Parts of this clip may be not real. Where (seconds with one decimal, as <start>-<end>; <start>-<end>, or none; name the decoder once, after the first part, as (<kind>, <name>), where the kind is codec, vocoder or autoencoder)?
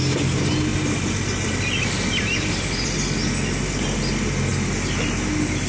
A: 0.7-4.1 (vocoder, BigVGAN v2)